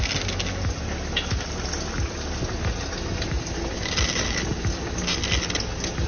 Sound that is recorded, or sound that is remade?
recorded